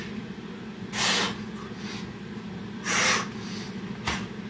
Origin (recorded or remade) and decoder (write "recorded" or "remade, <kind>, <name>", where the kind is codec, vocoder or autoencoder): recorded